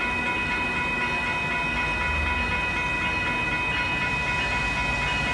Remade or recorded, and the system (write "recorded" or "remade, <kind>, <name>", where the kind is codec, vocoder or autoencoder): recorded